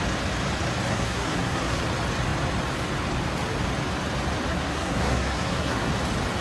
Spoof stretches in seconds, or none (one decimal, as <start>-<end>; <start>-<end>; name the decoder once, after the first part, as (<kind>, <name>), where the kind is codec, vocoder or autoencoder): 0.9-1.8 (codec, SNAC); 4.5-5.9